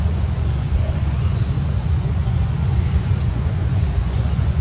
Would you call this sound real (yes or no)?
no